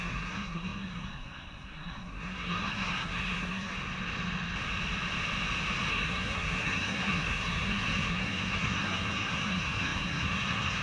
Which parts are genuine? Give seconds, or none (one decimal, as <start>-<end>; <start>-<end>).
3.7-5.9